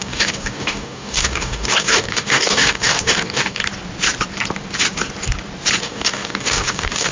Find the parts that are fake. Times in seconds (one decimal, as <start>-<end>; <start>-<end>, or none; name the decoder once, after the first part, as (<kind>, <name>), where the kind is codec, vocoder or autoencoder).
0.0-3.6 (codec, DAC); 5.8-7.1

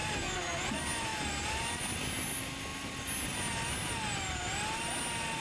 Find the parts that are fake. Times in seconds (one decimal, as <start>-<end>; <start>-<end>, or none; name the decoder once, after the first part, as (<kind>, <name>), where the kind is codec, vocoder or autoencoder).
none